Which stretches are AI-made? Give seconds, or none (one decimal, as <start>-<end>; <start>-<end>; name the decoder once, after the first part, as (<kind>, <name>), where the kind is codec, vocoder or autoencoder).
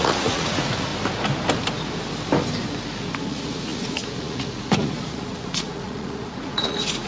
0.0-0.9 (vocoder, Vocos); 3.3-7.1